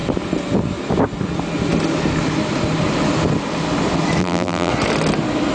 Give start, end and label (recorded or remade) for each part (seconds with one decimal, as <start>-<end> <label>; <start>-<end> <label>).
0.0-4.2 recorded; 4.2-4.7 remade; 4.7-5.5 recorded